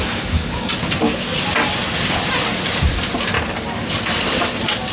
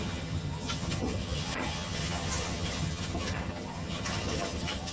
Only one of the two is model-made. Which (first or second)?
second